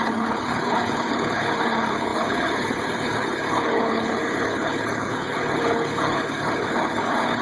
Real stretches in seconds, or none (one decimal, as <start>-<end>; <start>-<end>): none